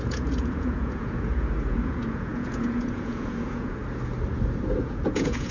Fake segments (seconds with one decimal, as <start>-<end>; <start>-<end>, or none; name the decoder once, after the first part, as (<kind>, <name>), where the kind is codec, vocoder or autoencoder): 0.0-3.8 (vocoder, Vocos); 4.8-5.5